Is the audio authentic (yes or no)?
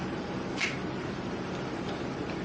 no